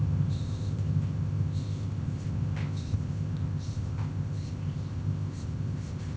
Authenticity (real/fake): fake